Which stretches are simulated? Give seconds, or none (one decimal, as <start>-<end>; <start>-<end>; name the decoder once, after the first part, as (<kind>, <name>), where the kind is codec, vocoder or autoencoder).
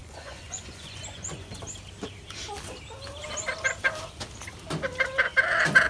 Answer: 0.0-1.6 (vocoder, Vocos)